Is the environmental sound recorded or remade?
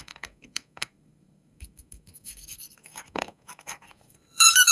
remade